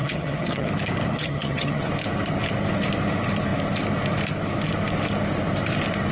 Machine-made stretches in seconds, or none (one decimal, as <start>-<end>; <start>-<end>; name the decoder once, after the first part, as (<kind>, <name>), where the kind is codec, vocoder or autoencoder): 0.0-0.7 (vocoder, HiFi-GAN); 1.1-1.9